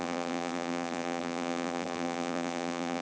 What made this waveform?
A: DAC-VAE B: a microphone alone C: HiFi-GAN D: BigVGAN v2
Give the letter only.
D